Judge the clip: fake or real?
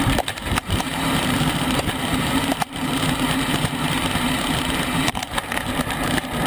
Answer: fake